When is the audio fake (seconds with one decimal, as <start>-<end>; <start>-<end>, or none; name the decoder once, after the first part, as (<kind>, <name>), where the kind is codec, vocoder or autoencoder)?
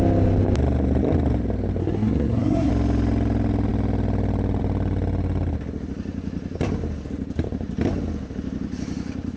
1.8-2.7 (codec, SNAC)